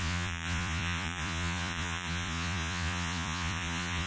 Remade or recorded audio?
remade